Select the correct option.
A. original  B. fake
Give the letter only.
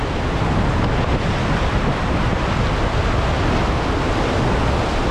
A